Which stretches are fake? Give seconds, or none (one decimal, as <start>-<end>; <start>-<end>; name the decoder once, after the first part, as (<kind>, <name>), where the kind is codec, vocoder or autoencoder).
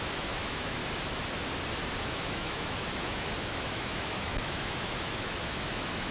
0.0-0.8 (autoencoder, DAC-VAE); 2.0-6.1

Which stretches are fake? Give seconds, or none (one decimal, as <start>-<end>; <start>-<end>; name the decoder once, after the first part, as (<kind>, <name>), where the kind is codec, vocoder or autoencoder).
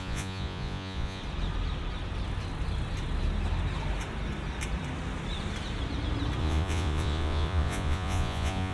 0.0-1.2 (vocoder, Vocos); 6.4-8.7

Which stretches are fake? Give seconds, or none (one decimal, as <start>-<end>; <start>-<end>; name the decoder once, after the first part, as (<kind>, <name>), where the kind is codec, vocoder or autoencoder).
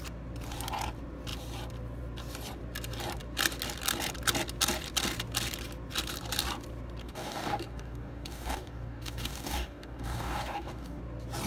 7.0-11.0 (codec, DAC)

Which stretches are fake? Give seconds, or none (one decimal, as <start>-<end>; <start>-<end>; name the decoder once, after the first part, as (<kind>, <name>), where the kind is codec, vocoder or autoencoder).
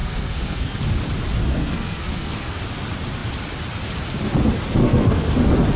0.0-0.8 (codec, SNAC); 1.5-2.6; 4.8-5.3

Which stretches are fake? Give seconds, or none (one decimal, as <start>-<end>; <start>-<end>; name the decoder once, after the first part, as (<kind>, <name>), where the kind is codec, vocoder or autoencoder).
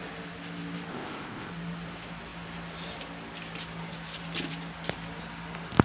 0.9-1.5 (codec, ZipCodec)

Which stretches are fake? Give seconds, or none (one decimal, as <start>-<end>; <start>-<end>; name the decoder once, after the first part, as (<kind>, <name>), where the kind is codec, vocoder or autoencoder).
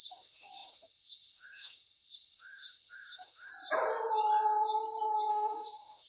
0.0-3.5 (autoencoder, DAC-VAE); 5.3-6.1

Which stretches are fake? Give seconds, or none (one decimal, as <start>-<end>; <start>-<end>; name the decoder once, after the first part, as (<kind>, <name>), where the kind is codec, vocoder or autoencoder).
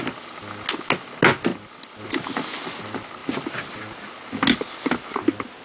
none